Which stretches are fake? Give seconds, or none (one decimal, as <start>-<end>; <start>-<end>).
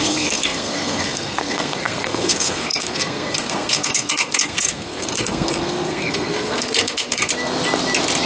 0.0-7.3